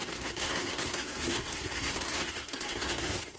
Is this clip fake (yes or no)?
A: yes